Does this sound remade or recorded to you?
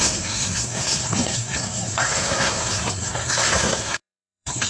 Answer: remade